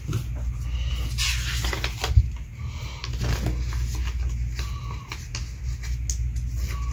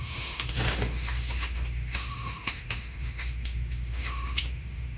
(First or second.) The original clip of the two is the first